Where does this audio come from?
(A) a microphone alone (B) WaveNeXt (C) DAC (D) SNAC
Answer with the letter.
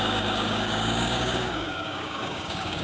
C